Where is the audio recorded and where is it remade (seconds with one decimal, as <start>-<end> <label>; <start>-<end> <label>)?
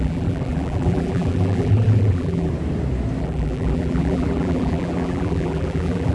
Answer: 0.0-2.5 remade; 2.5-3.2 recorded; 3.2-6.1 remade